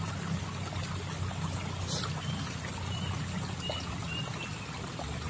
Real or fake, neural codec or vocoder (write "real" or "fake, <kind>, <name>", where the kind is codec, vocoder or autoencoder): real